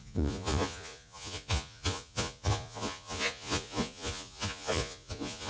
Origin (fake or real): fake